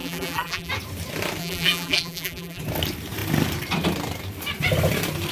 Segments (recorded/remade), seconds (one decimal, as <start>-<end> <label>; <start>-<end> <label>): 0.0-0.7 remade; 0.7-1.4 recorded; 1.4-2.6 remade; 2.6-5.3 recorded